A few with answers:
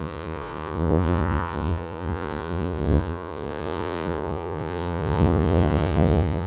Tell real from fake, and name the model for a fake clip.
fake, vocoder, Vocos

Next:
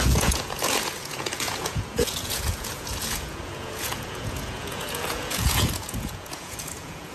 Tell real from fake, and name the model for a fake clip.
fake, vocoder, Vocos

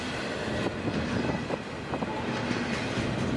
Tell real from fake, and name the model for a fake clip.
real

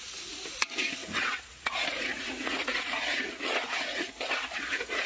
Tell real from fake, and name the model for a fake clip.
fake, vocoder, Vocos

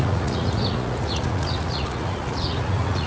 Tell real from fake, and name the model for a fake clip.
fake, vocoder, Vocos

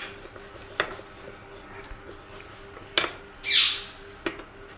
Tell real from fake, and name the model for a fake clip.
real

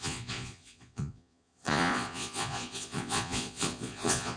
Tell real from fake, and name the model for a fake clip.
fake, vocoder, Vocos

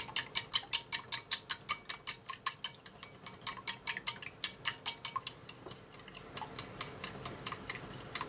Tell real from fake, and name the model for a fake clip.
real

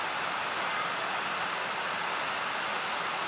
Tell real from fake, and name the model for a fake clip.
real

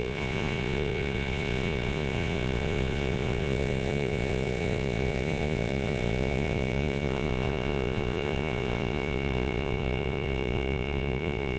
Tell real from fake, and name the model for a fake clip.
fake, vocoder, Vocos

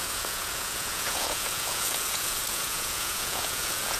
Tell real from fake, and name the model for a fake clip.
fake, vocoder, Vocos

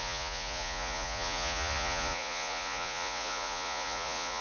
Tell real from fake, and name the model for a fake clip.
fake, vocoder, Vocos